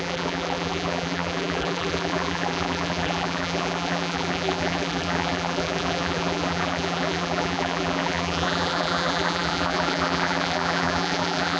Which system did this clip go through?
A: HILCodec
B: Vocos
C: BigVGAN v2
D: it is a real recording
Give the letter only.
C